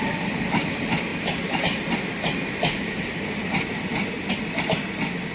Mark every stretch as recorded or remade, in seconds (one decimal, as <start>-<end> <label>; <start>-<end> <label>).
0.0-5.3 recorded